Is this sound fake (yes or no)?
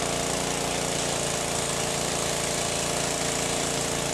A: no